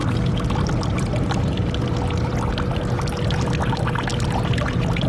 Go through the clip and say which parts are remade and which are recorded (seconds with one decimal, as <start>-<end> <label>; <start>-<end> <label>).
0.0-5.1 recorded